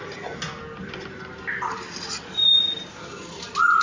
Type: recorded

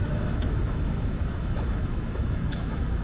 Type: remade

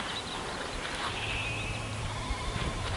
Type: remade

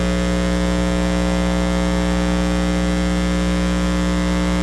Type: recorded